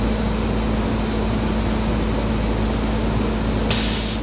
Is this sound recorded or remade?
recorded